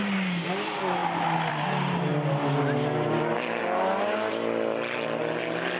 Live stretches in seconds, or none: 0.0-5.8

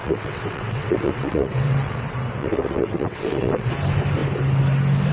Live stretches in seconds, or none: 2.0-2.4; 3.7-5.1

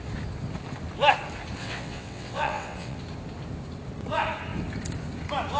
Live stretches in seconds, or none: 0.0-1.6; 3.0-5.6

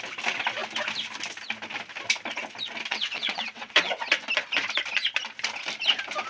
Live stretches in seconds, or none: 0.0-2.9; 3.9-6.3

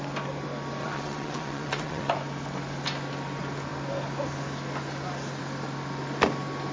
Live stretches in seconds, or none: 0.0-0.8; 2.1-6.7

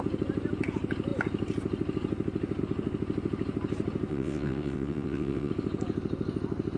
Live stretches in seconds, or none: 0.0-4.1; 5.5-6.8

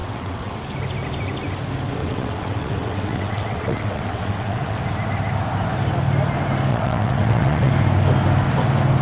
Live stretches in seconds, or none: 0.6-2.0; 4.8-6.7; 7.7-9.0

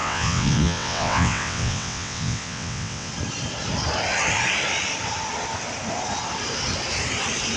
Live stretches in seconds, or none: 3.1-7.6